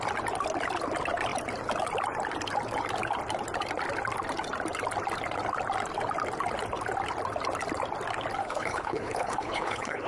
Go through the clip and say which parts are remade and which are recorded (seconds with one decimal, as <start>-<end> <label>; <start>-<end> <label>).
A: 0.0-8.4 recorded; 8.4-10.1 remade